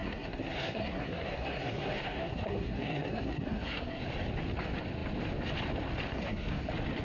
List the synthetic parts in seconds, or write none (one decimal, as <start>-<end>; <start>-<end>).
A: 0.0-4.0; 6.1-6.6